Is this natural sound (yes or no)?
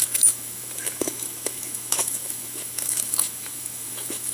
no